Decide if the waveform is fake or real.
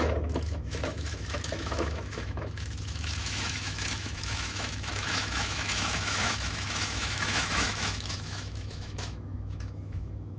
fake